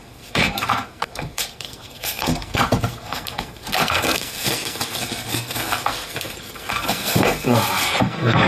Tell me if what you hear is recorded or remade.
remade